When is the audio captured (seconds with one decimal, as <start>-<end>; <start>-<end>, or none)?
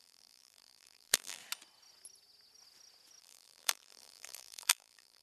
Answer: 1.4-3.2